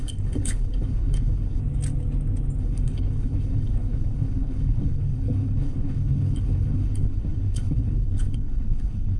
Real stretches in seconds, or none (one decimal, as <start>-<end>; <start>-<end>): 1.6-2.6